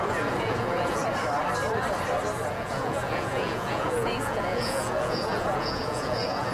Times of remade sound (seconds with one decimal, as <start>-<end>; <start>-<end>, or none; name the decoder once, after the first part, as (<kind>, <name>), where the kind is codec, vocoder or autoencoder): 0.0-1.0 (vocoder, Vocos); 2.5-6.5